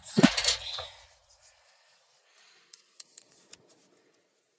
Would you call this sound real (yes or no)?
no